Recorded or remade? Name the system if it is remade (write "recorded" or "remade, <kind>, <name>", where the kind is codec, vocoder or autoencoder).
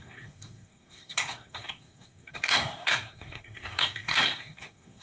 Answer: remade, codec, SNAC